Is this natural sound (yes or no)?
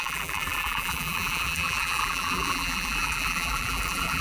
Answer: no